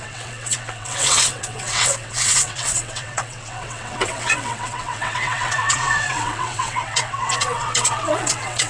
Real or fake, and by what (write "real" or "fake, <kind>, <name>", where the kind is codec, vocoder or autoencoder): fake, vocoder, WaveNeXt